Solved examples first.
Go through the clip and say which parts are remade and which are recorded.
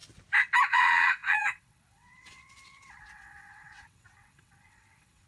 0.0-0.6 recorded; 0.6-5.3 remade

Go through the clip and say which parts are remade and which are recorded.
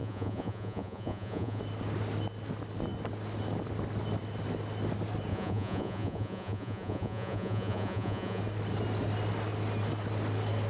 0.0-1.6 remade; 1.6-5.3 recorded; 5.3-8.4 remade; 8.4-10.7 recorded